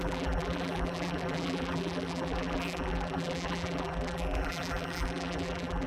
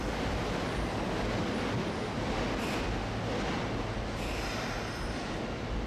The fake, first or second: first